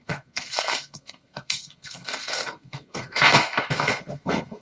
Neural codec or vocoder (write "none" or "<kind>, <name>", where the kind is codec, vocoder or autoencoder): codec, SNAC